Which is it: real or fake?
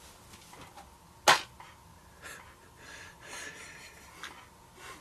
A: real